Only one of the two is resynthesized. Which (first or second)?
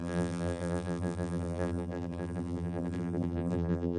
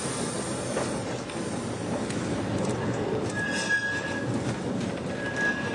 first